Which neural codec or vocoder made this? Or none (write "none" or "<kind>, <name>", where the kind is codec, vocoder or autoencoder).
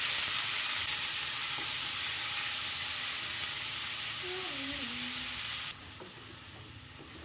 none